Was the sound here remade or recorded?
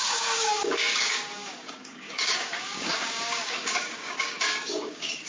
remade